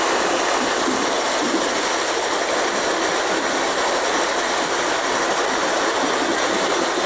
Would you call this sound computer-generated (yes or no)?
no